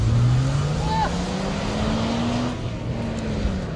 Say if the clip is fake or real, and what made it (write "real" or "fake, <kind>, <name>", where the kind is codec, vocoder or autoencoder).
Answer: real